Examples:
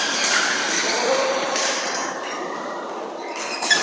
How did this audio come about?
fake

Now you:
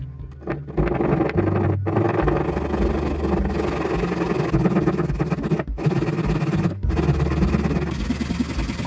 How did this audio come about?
real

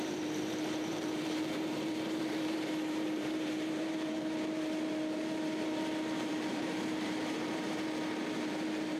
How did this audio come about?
fake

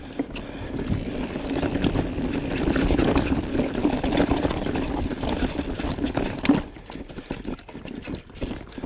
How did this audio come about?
real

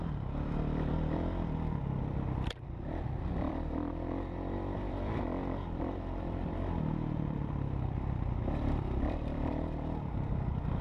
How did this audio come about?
fake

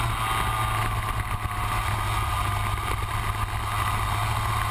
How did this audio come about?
real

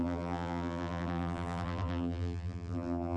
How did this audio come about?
fake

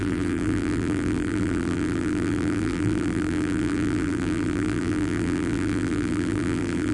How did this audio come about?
fake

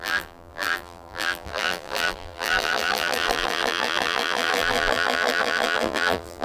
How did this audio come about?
fake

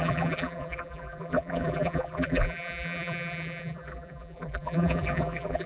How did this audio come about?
fake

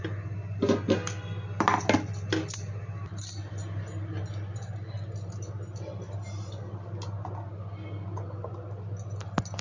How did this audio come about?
real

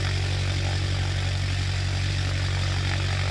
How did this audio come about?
real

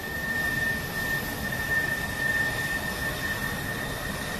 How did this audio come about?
real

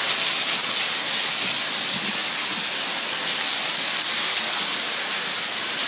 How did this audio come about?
real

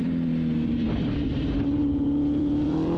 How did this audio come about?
fake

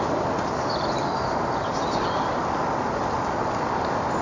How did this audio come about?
fake